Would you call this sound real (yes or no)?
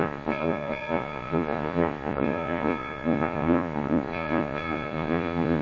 no